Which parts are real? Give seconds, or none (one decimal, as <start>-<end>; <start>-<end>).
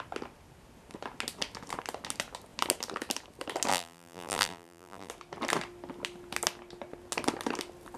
0.0-3.7; 5.1-8.0